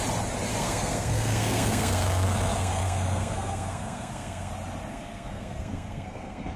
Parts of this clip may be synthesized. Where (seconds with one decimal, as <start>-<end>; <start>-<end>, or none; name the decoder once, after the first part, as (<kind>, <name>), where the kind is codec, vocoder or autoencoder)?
0.5-4.5 (codec, SNAC); 4.9-6.6